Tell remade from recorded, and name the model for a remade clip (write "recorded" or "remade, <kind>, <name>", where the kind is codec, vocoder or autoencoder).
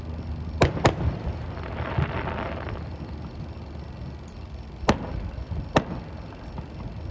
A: recorded